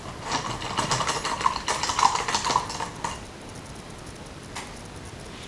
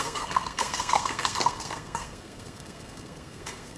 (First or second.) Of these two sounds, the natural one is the first